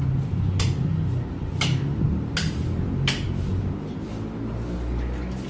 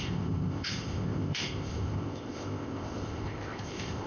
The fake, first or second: second